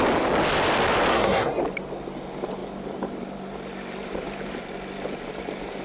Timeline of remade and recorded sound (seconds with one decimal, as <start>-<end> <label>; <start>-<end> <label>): 0.0-1.1 recorded; 1.1-1.6 remade; 1.6-5.8 recorded